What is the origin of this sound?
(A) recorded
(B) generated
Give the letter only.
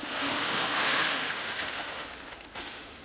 B